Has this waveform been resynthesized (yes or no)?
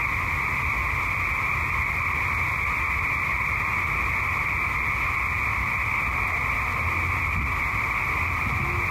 no